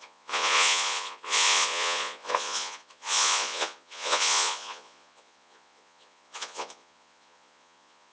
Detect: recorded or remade remade